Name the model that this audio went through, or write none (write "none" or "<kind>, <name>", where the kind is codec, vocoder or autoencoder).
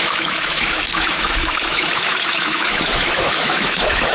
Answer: autoencoder, DAC-VAE